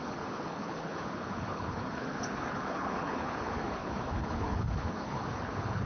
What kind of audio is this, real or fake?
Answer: fake